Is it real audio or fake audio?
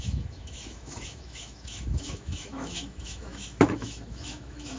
fake